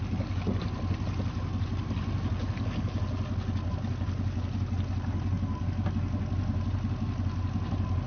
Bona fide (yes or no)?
yes